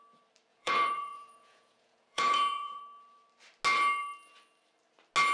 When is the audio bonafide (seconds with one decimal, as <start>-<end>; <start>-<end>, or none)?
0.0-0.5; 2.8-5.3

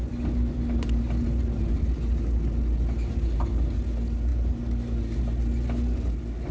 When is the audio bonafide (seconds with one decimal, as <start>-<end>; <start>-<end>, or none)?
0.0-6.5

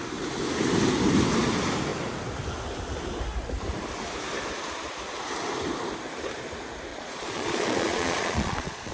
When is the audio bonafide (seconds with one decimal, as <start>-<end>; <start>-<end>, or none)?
0.0-6.9